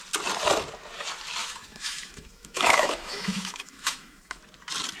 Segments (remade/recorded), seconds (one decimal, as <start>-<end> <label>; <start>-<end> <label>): 0.0-1.4 recorded; 1.4-4.4 remade; 4.4-5.0 recorded